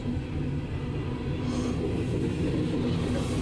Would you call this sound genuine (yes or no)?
yes